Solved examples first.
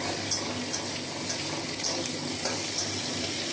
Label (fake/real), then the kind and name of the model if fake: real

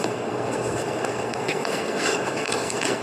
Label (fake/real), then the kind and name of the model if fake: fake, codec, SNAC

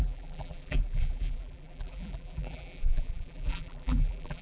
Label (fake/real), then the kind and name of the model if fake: fake, vocoder, BigVGAN v2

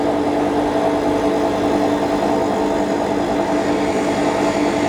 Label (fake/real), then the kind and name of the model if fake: real